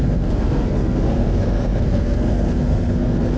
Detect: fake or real fake